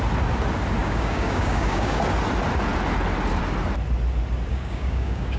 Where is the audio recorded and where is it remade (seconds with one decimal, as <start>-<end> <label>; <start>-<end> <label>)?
0.0-0.8 recorded; 0.8-2.0 remade; 2.0-4.5 recorded; 4.5-5.4 remade